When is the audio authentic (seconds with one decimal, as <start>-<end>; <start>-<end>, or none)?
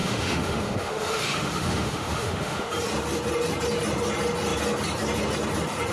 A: 2.7-5.9